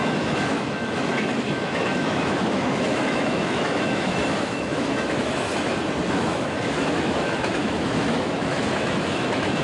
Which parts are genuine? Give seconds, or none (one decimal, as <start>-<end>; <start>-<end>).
5.5-6.1